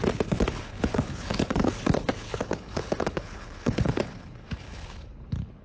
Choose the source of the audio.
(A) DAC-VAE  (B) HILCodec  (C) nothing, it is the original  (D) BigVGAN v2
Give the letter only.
B